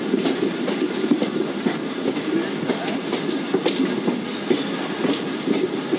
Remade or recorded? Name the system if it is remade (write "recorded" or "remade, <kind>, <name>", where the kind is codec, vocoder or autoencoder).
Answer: recorded